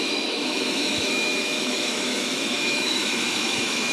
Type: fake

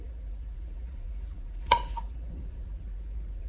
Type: fake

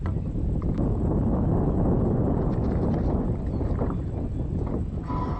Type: real